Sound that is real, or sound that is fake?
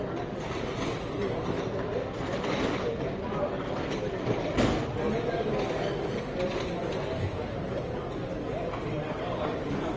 real